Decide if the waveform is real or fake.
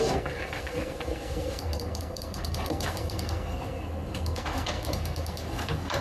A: fake